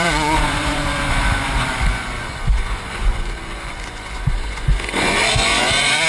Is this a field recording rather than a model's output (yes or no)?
no